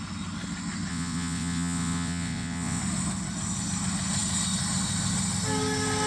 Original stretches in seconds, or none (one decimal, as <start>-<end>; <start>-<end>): 0.0-0.9; 2.8-6.1